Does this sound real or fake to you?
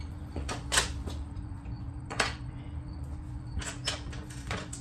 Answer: fake